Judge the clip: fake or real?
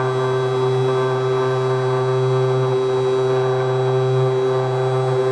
real